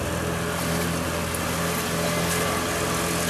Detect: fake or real real